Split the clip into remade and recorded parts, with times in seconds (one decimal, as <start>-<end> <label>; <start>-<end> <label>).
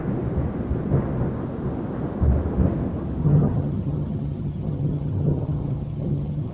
0.0-3.2 recorded; 3.2-6.5 remade